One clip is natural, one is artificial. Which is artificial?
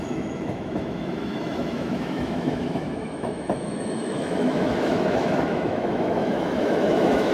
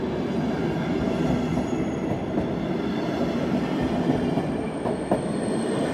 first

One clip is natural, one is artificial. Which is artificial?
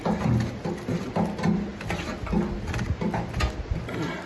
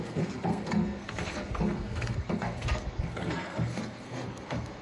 second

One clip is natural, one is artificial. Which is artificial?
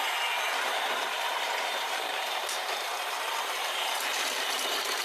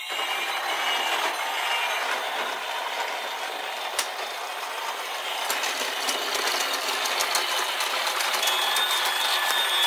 first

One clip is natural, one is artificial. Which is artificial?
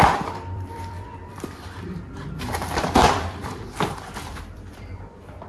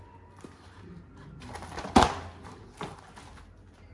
first